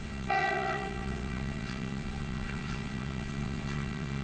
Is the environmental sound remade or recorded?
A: remade